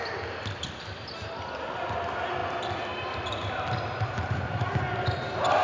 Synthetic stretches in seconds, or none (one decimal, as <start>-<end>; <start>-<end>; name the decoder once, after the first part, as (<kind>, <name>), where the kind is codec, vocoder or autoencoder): none